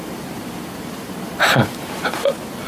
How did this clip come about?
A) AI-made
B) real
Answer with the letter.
A